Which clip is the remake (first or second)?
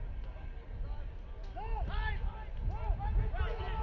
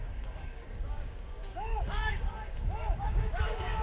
second